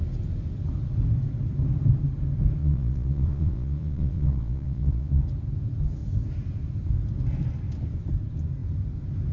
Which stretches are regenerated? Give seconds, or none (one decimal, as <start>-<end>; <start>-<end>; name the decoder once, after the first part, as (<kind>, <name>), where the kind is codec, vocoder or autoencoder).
2.6-5.2 (vocoder, Vocos)